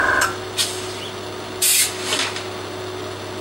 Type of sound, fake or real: real